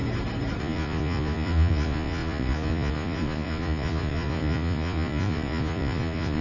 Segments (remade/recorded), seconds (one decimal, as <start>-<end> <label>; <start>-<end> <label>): 0.0-0.6 recorded; 0.6-6.4 remade